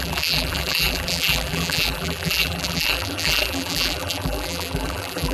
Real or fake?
fake